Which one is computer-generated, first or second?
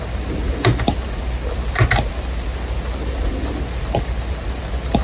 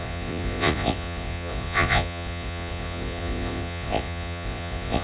second